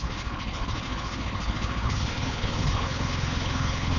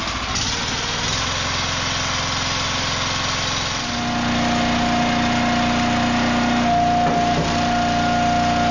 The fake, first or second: first